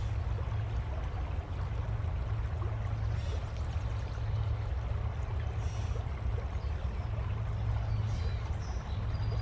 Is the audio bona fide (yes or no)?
yes